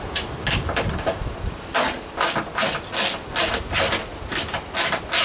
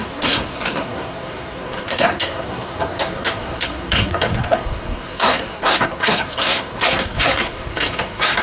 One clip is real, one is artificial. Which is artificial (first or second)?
second